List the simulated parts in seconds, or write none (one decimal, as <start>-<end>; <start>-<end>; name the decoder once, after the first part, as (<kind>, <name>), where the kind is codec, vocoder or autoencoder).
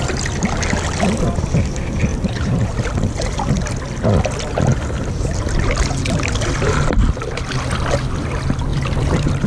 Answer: 2.1-2.8 (vocoder, BigVGAN v2); 8.7-9.5